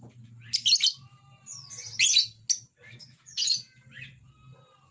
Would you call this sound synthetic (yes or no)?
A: no